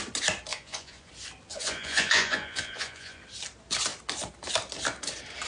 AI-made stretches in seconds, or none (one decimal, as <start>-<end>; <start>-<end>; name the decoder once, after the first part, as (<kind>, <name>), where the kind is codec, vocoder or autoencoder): 0.5-1.1 (vocoder, Vocos); 1.5-3.2